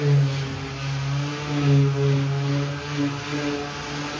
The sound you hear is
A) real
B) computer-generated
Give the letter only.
A